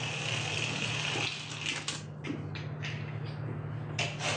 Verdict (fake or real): real